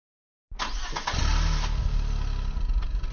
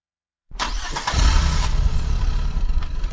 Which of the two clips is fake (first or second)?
second